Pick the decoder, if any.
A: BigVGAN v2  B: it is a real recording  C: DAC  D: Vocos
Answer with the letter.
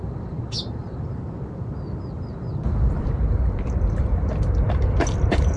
A